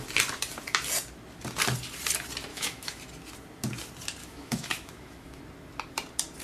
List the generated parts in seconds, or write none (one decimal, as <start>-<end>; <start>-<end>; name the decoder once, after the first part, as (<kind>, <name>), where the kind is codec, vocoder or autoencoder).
2.5-3.0 (autoencoder, DAC-VAE); 4.2-5.4